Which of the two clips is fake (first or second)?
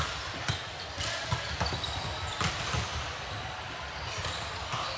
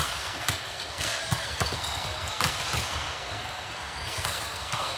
second